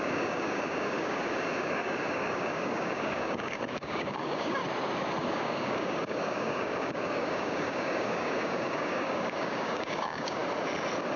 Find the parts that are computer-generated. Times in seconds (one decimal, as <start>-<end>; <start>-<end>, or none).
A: 0.0-4.6; 5.2-10.4